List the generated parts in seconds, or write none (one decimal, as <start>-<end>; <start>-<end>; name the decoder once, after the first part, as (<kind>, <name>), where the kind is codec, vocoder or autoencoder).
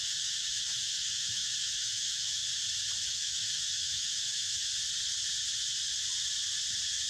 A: 0.0-2.4 (autoencoder, DAC-VAE); 3.0-4.7